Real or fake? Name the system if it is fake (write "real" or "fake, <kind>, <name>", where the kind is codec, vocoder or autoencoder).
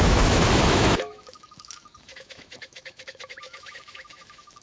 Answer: fake, autoencoder, DAC-VAE